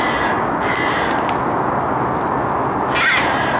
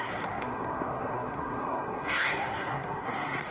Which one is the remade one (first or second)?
second